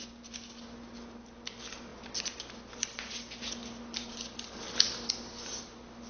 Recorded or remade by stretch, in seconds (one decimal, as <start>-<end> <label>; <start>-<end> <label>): 0.0-6.1 recorded